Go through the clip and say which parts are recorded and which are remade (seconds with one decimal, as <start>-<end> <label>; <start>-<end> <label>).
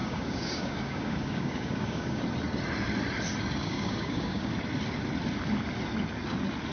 0.0-2.2 remade; 2.2-3.6 recorded; 3.6-4.5 remade; 4.5-6.7 recorded